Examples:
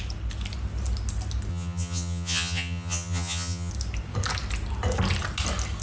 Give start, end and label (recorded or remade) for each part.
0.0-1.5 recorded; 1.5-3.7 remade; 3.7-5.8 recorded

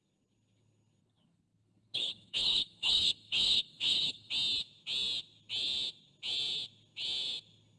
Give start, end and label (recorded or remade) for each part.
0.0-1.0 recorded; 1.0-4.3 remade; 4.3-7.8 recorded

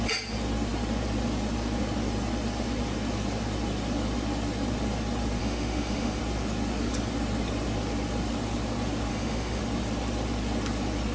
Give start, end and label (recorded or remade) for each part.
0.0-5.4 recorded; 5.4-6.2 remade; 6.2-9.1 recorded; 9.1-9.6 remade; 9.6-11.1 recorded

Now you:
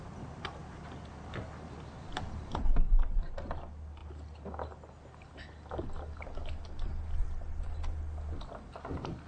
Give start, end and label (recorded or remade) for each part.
0.0-9.3 recorded

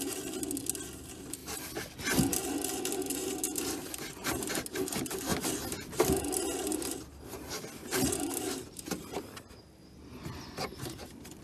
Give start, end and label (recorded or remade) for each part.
0.0-11.4 recorded

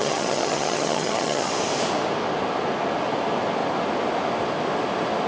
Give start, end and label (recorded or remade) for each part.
0.0-1.5 remade; 1.5-5.3 recorded